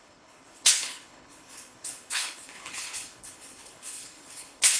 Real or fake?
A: fake